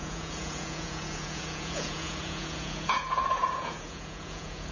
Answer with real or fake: fake